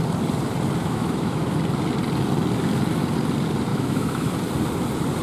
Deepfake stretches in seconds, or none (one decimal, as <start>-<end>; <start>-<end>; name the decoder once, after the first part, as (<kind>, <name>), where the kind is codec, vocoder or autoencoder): 0.8-1.4 (autoencoder, DAC-VAE); 3.7-4.3